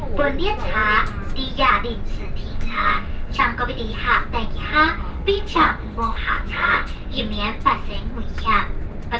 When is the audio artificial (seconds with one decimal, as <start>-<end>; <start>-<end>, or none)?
2.5-3.4; 5.1-7.2